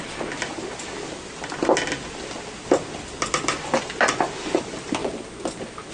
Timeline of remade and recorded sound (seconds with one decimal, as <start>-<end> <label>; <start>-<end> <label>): 0.0-5.9 recorded